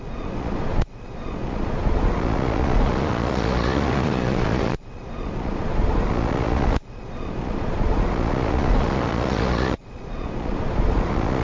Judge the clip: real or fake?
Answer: fake